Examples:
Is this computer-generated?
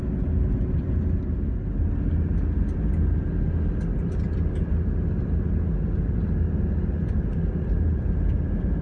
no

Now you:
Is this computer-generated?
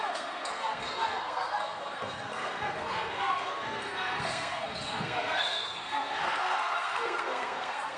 yes